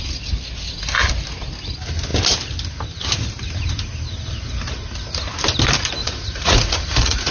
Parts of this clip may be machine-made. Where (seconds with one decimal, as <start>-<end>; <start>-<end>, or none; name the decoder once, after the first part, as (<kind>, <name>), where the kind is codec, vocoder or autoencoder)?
6.0-7.3 (vocoder, Vocos)